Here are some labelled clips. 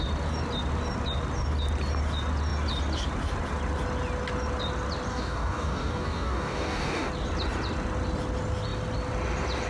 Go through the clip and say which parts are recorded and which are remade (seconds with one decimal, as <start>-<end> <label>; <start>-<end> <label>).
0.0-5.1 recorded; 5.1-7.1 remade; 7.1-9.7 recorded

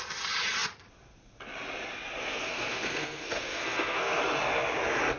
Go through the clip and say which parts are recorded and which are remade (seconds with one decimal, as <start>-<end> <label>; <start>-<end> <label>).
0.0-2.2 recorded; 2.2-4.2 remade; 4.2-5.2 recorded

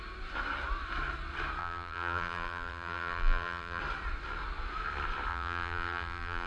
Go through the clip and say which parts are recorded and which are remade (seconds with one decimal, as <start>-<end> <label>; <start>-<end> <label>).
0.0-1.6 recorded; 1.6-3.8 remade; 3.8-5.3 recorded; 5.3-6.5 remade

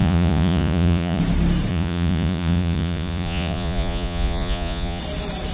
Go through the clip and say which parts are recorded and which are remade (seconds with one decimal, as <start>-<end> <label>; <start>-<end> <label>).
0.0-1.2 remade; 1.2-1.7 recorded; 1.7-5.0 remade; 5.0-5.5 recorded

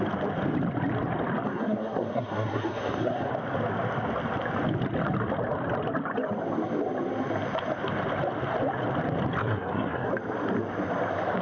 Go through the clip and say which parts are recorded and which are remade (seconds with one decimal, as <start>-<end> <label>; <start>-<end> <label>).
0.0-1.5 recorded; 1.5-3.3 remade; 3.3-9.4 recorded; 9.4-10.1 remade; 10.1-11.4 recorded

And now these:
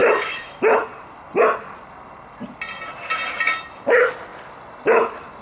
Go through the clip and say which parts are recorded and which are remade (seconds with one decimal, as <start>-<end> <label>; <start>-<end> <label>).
0.0-0.8 remade; 0.8-5.4 recorded

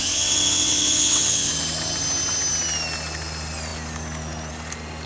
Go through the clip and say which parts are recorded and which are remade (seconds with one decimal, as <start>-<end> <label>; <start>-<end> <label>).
0.0-1.5 remade; 1.5-5.1 recorded